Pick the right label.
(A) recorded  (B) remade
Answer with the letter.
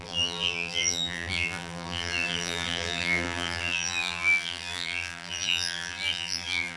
B